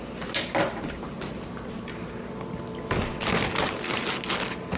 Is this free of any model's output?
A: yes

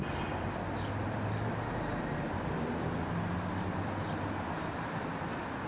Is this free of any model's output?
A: yes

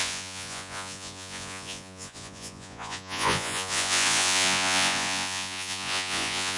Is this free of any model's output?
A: no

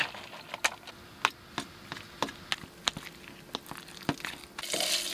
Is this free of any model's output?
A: yes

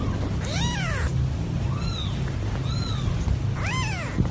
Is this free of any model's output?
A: yes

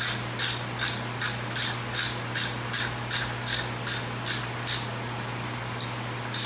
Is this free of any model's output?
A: yes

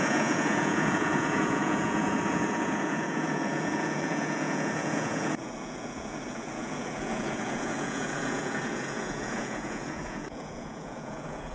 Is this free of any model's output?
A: no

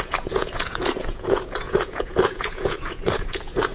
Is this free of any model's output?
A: no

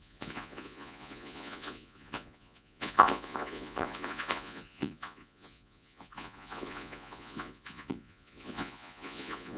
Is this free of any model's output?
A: no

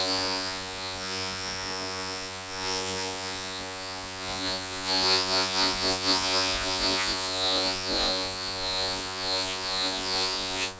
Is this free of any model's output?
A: no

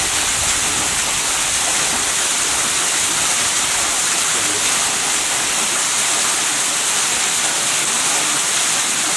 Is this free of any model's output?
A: yes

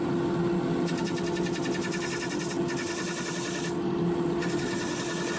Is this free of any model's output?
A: yes